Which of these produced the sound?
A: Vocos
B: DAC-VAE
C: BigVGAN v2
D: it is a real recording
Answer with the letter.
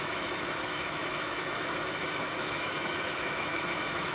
B